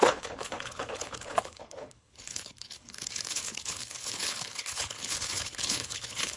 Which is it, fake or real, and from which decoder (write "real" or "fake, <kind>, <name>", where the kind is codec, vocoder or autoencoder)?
fake, codec, HILCodec